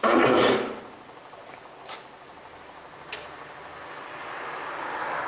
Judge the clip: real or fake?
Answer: real